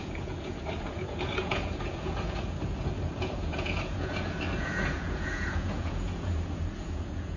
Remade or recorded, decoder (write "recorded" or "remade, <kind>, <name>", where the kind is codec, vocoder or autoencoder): remade, vocoder, Vocos